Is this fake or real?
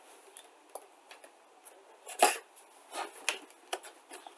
real